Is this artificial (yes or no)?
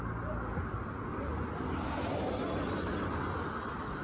no